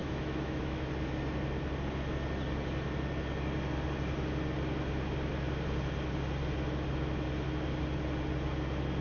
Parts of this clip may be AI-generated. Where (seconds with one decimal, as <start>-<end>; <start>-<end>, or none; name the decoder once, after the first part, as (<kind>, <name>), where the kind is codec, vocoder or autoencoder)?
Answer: 0.0-0.9 (autoencoder, DAC-VAE)